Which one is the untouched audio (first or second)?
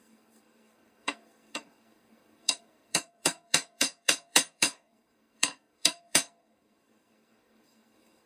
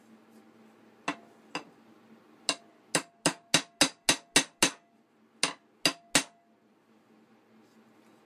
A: second